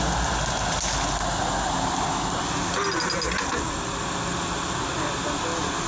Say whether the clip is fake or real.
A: real